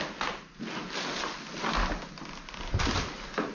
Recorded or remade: recorded